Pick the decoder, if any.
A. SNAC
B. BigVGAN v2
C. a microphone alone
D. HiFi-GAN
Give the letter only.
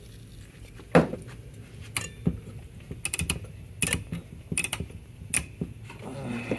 C